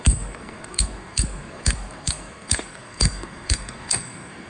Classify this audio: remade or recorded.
remade